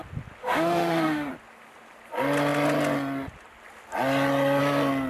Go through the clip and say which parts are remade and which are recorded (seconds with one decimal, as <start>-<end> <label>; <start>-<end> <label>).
0.0-0.4 recorded; 0.4-1.3 remade; 1.3-5.1 recorded